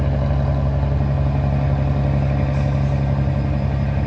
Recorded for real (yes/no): yes